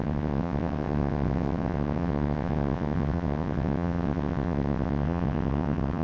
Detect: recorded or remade remade